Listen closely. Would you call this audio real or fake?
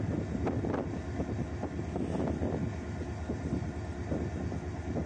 real